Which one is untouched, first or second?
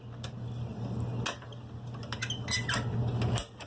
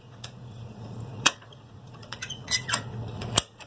first